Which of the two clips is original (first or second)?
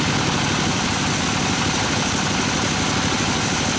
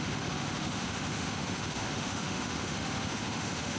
first